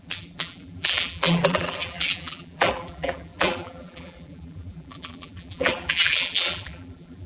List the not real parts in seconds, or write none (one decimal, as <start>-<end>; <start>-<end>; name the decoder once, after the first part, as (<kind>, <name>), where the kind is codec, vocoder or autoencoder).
0.0-7.3 (vocoder, BigVGAN v2)